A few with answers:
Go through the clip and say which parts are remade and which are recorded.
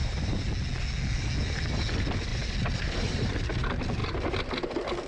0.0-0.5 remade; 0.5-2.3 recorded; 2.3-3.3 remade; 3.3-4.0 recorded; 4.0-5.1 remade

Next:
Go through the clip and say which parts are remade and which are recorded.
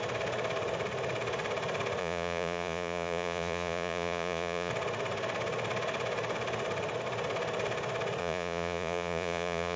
0.0-2.0 recorded; 2.0-4.7 remade; 4.7-8.2 recorded; 8.2-9.8 remade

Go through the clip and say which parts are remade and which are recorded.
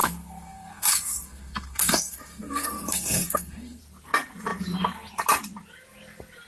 0.0-3.8 remade; 3.8-6.5 recorded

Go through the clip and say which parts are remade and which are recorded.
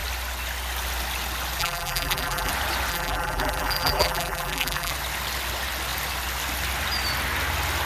0.0-1.6 recorded; 1.6-2.5 remade; 2.5-2.9 recorded; 2.9-4.9 remade; 4.9-7.9 recorded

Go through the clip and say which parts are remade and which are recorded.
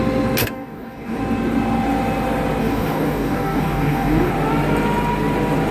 0.0-0.4 recorded; 0.4-1.2 remade; 1.2-2.6 recorded; 2.6-4.3 remade; 4.3-5.7 recorded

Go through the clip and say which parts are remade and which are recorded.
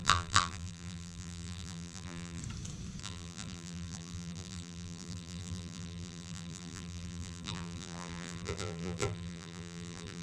0.0-2.4 remade; 2.4-3.0 recorded; 3.0-10.2 remade